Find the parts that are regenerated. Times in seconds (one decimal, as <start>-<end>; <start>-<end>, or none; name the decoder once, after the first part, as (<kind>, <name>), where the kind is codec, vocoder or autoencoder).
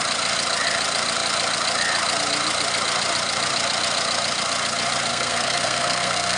5.1-6.4 (codec, SNAC)